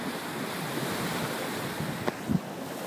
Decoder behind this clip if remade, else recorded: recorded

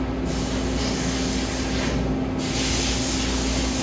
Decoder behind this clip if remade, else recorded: recorded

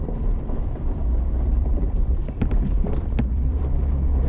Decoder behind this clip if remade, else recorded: remade, vocoder, BigVGAN v2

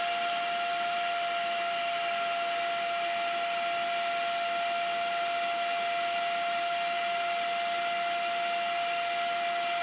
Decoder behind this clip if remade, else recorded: recorded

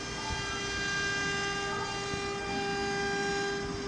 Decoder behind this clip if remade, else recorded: recorded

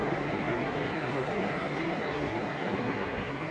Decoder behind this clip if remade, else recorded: remade, codec, SNAC